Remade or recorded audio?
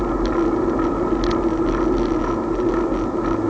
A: recorded